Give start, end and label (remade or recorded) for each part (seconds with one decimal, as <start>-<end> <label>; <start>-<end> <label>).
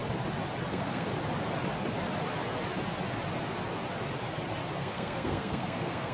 0.0-0.7 recorded; 0.7-1.1 remade; 1.1-4.8 recorded; 4.8-6.1 remade